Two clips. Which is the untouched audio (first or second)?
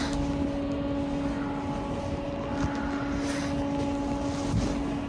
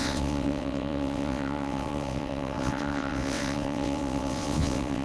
first